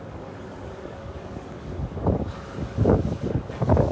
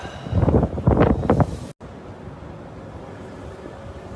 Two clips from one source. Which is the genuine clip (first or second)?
second